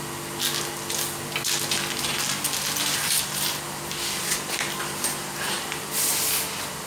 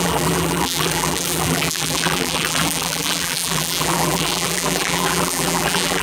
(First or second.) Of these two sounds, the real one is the first